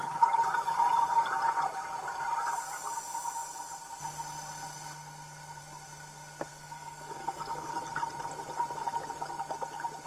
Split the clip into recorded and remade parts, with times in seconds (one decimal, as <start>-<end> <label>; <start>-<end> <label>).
0.0-6.5 recorded; 6.5-7.8 remade; 7.8-10.1 recorded

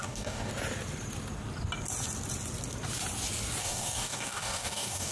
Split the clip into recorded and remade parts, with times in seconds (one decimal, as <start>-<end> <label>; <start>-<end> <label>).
0.0-0.5 remade; 0.5-3.6 recorded; 3.6-5.1 remade

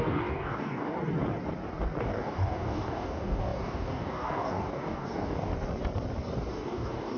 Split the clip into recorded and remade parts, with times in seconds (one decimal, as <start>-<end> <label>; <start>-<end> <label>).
0.0-0.9 remade; 0.9-2.0 recorded; 2.0-5.5 remade; 5.5-6.5 recorded; 6.5-7.2 remade

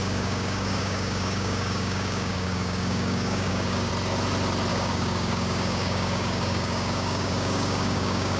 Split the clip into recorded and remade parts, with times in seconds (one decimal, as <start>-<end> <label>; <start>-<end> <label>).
0.0-3.9 remade; 3.9-4.7 recorded; 4.7-8.4 remade

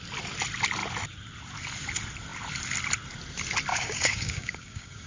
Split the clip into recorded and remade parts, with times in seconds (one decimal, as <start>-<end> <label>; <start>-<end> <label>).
0.0-3.7 recorded; 3.7-5.1 remade